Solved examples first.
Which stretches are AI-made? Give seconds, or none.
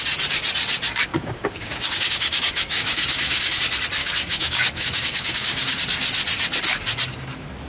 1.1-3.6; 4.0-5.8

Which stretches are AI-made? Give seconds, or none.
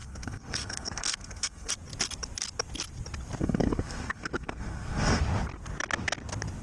0.0-1.7; 3.4-5.2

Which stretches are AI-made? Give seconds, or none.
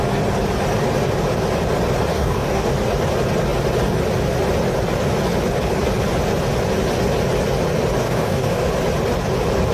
2.1-2.7; 8.0-8.7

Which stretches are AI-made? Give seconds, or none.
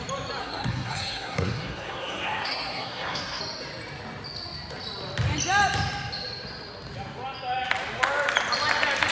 0.4-3.4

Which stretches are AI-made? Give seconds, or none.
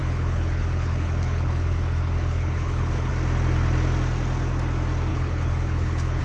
0.0-3.1; 5.1-6.2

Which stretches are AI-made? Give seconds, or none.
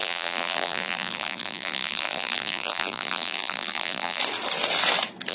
0.0-4.2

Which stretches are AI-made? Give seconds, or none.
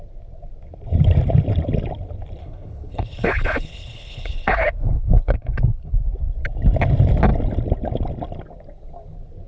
2.4-6.0